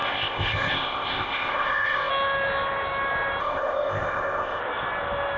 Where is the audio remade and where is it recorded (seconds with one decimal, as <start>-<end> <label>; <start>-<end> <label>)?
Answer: 0.0-2.1 remade; 2.1-3.4 recorded; 3.4-4.6 remade; 4.6-5.4 recorded